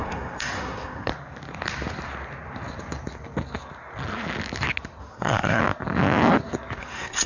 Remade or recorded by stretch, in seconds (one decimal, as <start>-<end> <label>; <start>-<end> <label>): 0.0-1.1 remade; 1.1-5.0 recorded; 5.0-5.6 remade; 5.6-6.8 recorded; 6.8-7.3 remade